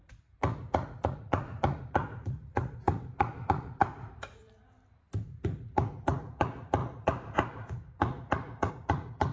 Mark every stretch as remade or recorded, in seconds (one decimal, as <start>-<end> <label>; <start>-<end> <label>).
0.0-4.4 remade; 4.4-5.2 recorded; 5.2-9.3 remade